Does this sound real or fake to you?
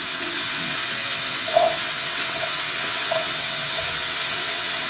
fake